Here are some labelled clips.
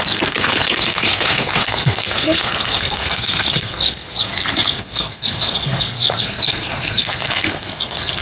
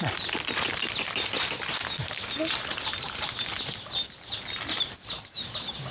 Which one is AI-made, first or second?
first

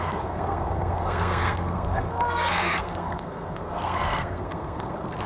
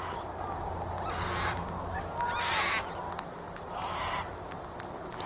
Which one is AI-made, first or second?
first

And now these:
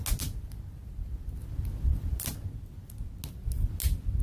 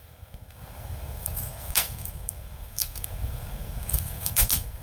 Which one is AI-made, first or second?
second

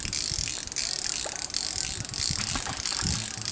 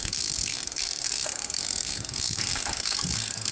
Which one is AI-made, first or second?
second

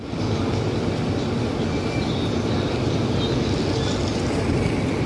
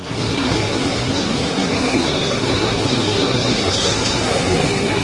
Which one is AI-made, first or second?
second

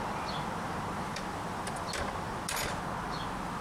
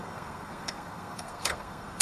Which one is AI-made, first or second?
second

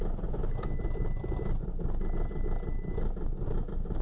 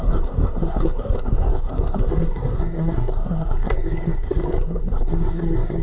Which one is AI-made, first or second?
second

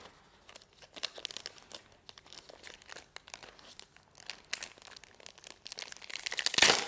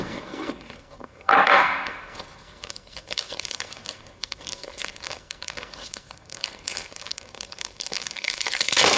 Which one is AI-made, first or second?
second